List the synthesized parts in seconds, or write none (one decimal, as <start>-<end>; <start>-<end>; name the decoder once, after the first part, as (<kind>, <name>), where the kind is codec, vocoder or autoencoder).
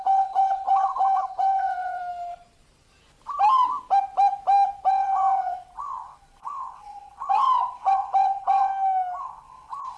0.0-2.0 (vocoder, WaveNeXt); 4.9-8.7; 9.2-10.0